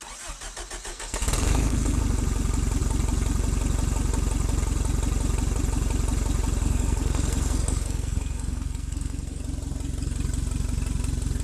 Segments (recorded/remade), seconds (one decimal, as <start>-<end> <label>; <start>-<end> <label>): 0.0-0.9 recorded; 0.9-2.0 remade; 2.0-6.6 recorded; 6.6-9.4 remade; 9.4-11.4 recorded